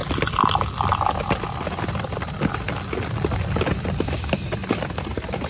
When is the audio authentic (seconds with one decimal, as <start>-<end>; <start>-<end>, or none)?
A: 0.0-5.5